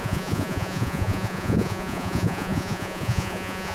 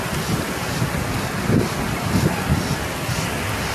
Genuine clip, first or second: second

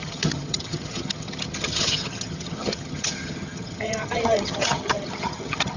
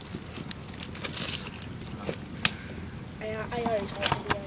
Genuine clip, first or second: second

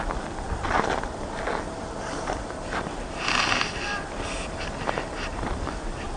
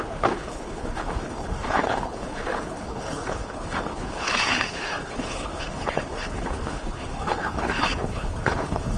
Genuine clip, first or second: first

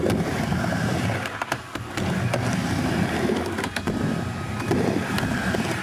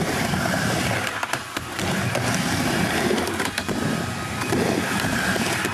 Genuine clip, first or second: first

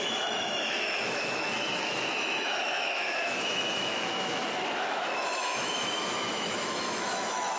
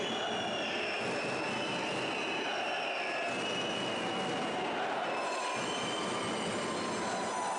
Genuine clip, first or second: second